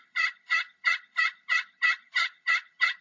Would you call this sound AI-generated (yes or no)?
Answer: yes